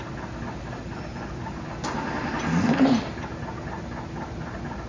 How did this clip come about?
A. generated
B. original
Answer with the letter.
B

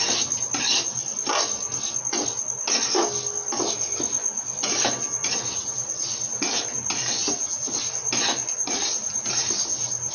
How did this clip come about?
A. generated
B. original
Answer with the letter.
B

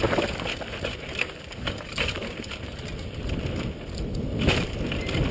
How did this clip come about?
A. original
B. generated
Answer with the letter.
A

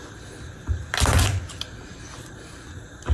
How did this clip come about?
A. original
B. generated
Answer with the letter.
B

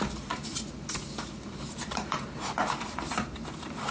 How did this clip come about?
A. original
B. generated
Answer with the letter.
B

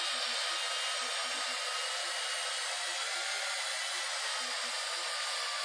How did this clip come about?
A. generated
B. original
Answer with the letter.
B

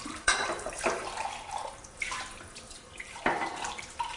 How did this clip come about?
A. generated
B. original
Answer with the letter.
A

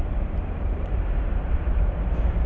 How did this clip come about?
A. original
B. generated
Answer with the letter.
B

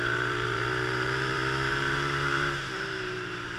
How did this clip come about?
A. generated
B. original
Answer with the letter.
A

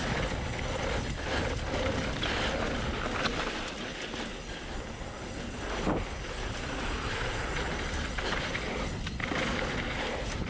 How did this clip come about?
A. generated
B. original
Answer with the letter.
B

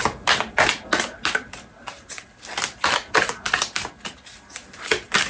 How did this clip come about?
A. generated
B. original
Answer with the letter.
B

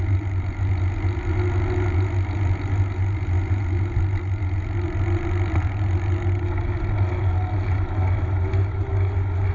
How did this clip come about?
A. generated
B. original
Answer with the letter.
B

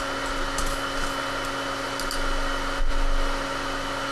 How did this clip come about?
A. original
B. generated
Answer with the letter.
A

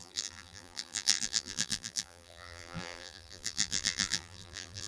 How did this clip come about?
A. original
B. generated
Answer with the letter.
B